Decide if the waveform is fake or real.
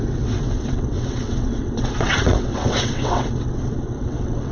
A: fake